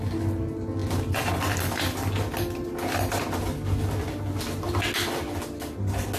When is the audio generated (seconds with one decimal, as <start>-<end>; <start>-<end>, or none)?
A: none